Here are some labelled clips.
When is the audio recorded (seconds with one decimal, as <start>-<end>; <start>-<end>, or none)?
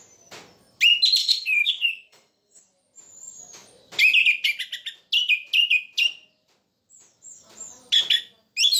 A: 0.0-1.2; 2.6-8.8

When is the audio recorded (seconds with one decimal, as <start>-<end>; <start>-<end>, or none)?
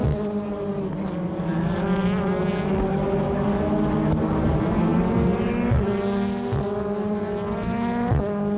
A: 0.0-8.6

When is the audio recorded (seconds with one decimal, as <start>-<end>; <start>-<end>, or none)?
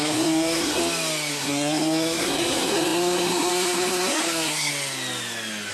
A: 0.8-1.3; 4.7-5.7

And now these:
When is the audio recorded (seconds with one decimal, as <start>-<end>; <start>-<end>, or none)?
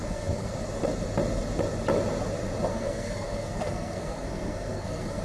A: 0.5-2.7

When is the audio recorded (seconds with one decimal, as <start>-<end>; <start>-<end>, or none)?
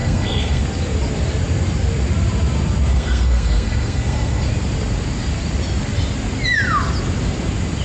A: 0.6-2.9; 4.5-7.8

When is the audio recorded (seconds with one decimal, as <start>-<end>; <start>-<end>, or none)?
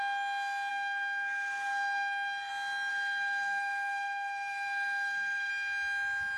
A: 0.0-0.7; 2.5-2.9; 5.5-6.4